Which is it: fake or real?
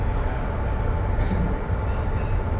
real